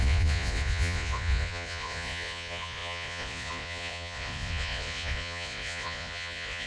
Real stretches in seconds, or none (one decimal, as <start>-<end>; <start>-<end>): none